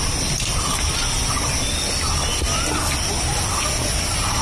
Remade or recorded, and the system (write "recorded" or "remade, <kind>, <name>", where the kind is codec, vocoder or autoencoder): recorded